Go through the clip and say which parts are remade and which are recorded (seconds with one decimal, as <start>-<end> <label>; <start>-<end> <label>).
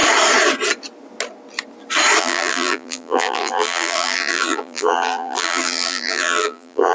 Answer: 0.0-2.2 recorded; 2.2-6.9 remade